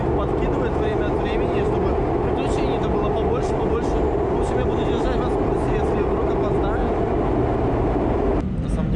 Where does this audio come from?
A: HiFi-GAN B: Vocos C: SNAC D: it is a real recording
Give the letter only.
D